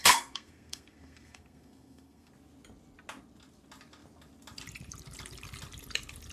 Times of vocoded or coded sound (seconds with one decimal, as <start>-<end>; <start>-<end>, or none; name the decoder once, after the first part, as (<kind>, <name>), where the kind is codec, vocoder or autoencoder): 0.0-2.3 (codec, SNAC)